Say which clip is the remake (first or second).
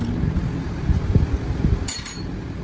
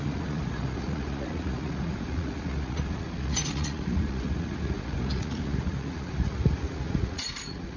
second